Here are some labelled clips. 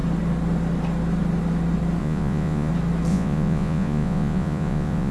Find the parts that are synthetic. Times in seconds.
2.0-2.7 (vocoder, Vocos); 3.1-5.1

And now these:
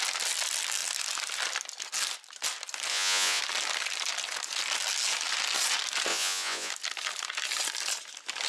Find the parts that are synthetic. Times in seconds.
2.9-3.4 (vocoder, Vocos); 6.1-6.7

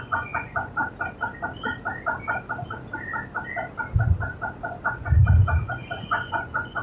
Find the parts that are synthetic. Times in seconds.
0.0-0.8 (vocoder, Vocos); 4.9-6.8

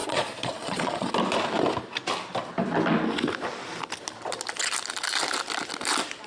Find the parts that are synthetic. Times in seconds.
0.0-1.1 (vocoder, Vocos)